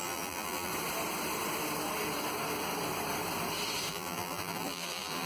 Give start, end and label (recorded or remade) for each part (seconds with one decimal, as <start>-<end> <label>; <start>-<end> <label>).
0.0-0.7 remade; 0.7-3.9 recorded; 3.9-5.3 remade